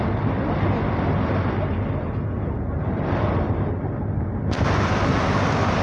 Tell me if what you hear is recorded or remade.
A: recorded